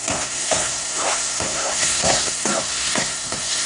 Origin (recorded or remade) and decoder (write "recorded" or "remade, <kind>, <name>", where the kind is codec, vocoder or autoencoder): remade, codec, SNAC